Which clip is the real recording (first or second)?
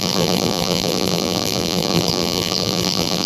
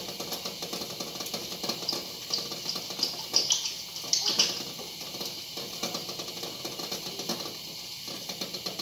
second